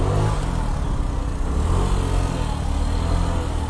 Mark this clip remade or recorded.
recorded